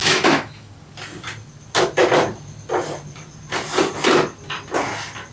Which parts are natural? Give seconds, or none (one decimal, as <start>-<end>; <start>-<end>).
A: 0.7-5.3